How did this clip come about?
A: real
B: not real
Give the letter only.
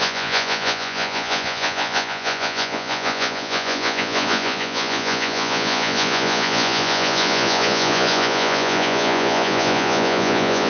B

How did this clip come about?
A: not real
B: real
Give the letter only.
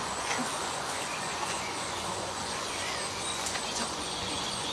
A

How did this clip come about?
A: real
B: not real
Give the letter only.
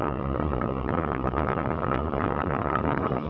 B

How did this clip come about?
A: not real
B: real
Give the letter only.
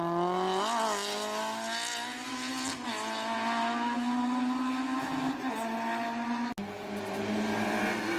B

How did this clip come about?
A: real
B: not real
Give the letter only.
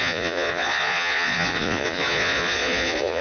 B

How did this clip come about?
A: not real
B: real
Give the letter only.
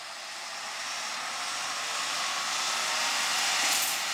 B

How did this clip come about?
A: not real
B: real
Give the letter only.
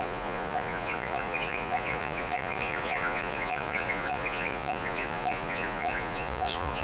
A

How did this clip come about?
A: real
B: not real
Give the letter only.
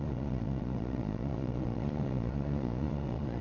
B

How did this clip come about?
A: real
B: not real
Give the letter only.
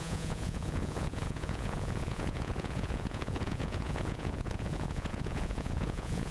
B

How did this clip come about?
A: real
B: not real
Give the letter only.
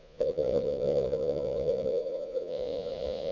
B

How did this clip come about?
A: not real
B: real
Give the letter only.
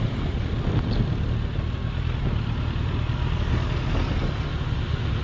B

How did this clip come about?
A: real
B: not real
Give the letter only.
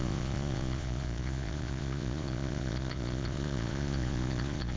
B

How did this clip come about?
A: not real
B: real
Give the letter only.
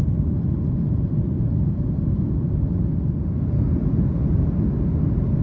B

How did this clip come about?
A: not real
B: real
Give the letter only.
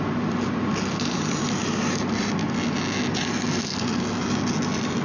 B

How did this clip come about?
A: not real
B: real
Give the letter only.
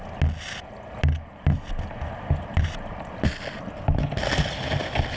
B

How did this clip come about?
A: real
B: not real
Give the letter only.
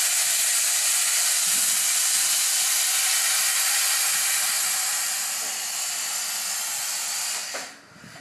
A